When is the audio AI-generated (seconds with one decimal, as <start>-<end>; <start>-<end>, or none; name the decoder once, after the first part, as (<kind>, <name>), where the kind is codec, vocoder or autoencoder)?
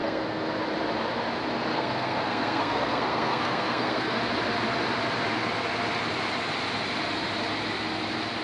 0.0-0.6 (codec, SNAC); 1.7-4.2